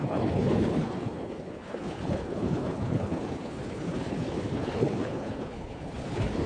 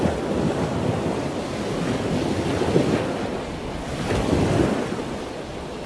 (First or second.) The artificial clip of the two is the first